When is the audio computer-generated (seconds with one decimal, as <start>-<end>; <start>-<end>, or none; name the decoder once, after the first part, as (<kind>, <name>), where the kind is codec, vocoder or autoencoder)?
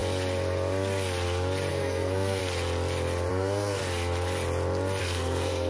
1.7-2.4 (codec, SNAC); 3.3-3.8; 5.0-5.7